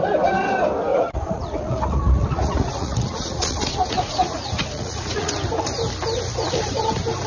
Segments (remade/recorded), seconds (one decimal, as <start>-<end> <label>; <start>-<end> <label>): 0.0-0.9 recorded; 0.9-5.3 remade; 5.3-7.3 recorded